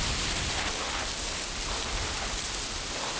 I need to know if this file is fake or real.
real